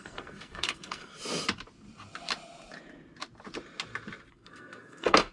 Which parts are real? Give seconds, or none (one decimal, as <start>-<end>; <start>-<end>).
1.1-4.3

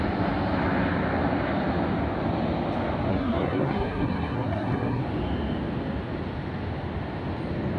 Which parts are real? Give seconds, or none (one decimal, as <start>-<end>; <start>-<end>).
0.0-3.1; 5.0-7.8

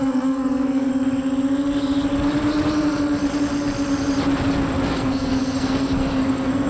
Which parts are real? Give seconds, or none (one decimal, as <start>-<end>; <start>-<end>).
0.9-4.9

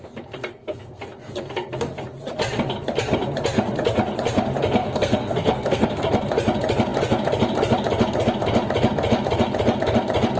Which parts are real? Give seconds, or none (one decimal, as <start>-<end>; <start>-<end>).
0.0-0.5; 1.0-4.8; 6.0-10.4

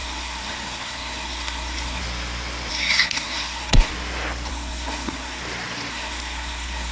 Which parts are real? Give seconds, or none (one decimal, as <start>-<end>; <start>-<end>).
2.0-2.7; 3.9-4.5; 5.4-5.9

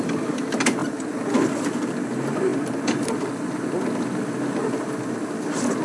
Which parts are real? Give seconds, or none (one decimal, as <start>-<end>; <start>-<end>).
0.0-5.8

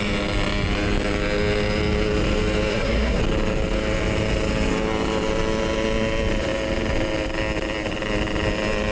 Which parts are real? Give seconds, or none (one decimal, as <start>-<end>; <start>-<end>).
0.0-2.7; 3.2-8.9

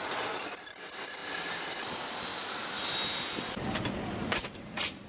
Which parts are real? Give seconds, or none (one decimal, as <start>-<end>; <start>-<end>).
0.0-5.1